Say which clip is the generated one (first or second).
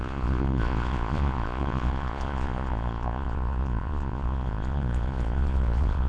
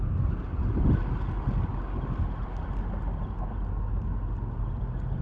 first